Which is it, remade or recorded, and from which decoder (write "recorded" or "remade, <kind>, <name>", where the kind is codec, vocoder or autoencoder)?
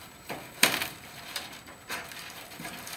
remade, vocoder, BigVGAN v2